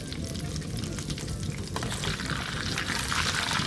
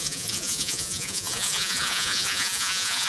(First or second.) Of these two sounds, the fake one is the second